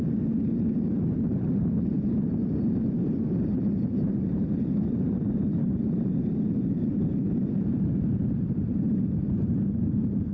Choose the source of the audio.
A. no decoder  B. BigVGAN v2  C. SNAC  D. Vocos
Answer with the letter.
B